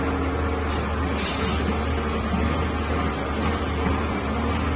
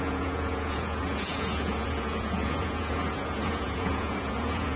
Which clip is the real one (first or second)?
first